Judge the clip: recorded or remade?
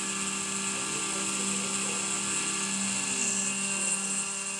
recorded